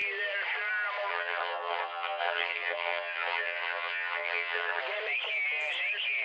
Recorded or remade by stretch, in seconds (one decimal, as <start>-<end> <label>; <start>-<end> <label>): 0.0-1.1 recorded; 1.1-4.8 remade; 4.8-6.2 recorded